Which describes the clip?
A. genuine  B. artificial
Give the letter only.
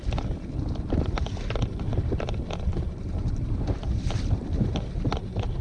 B